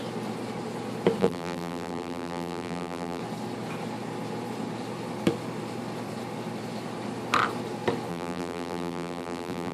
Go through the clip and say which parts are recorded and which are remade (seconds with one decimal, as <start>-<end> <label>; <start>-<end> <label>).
0.0-1.2 recorded; 1.2-3.2 remade; 3.2-8.1 recorded; 8.1-9.7 remade